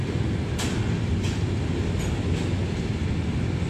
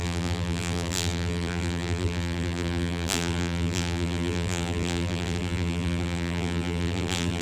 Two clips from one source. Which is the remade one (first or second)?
second